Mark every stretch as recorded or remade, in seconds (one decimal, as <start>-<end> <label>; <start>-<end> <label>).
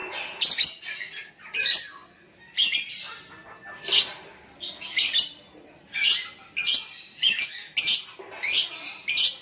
0.0-9.4 recorded